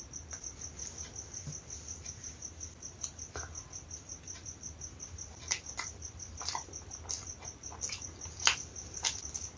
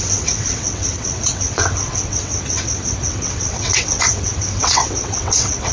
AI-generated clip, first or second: second